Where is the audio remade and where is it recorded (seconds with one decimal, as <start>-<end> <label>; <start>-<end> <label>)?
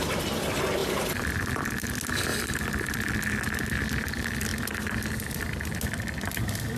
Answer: 0.0-0.8 recorded; 0.8-1.9 remade; 1.9-2.3 recorded; 2.3-2.9 remade; 2.9-6.8 recorded